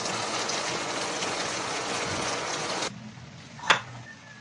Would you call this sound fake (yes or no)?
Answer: yes